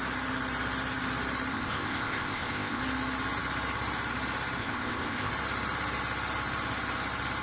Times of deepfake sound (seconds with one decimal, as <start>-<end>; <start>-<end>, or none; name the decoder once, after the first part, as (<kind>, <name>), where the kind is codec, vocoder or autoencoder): 1.5-2.8 (codec, ZipCodec); 4.6-5.3